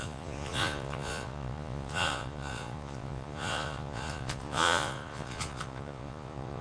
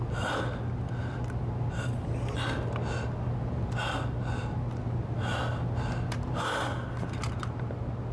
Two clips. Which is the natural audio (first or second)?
second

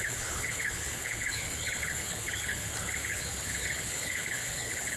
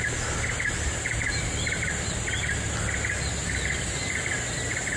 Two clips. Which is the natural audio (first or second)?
second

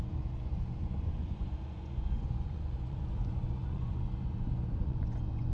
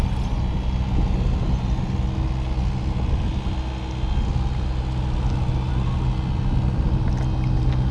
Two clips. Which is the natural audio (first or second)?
second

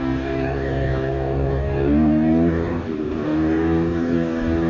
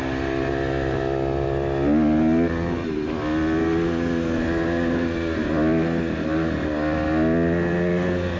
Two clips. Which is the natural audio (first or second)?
second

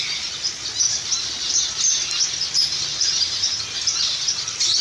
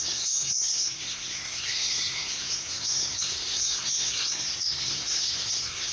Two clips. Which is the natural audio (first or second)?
first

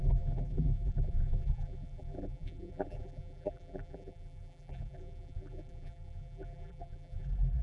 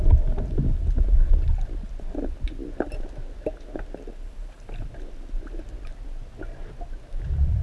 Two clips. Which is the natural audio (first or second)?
second